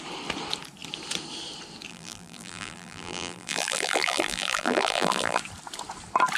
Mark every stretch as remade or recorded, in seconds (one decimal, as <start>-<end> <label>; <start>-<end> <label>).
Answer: 0.0-1.9 recorded; 1.9-5.4 remade; 5.4-6.4 recorded

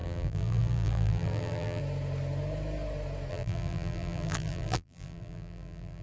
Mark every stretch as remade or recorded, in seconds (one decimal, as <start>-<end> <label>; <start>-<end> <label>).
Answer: 0.0-1.8 remade; 1.8-3.3 recorded; 3.3-6.0 remade

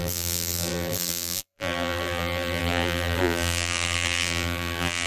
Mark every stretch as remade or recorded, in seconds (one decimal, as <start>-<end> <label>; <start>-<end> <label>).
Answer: 0.0-5.1 remade

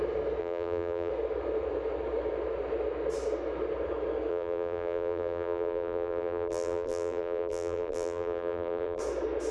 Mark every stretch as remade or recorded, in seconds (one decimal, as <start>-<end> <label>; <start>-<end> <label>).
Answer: 0.0-0.4 recorded; 0.4-1.1 remade; 1.1-4.3 recorded; 4.3-9.0 remade; 9.0-9.5 recorded